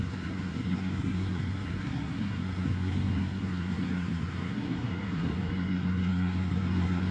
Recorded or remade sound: remade